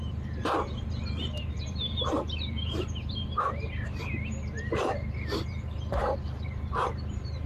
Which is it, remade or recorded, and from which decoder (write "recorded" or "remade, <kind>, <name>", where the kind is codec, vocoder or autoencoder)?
remade, vocoder, BigVGAN v2